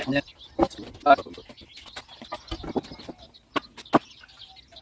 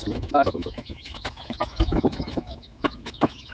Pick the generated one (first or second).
second